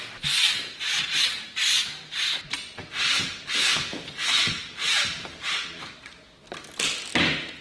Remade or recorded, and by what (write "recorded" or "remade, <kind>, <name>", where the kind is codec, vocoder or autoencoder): recorded